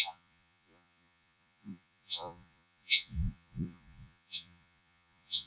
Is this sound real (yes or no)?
no